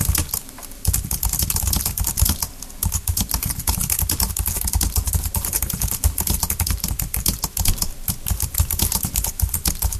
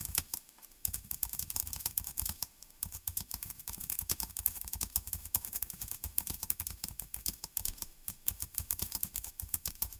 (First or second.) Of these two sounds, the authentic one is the first